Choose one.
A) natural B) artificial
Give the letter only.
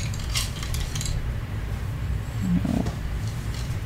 B